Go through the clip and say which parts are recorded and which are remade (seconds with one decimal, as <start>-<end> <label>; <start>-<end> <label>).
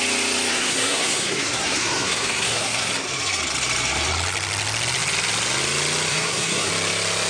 0.0-0.5 recorded; 0.5-2.9 remade; 2.9-6.1 recorded; 6.1-6.7 remade; 6.7-7.3 recorded